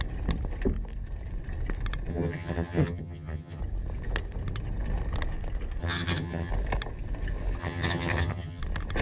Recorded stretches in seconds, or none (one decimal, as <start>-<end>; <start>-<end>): 0.0-2.1; 3.6-5.8; 6.5-7.6; 8.6-9.0